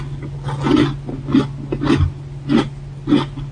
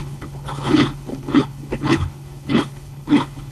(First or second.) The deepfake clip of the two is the second